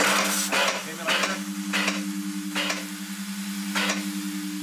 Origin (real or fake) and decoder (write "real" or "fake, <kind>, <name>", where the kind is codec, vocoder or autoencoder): real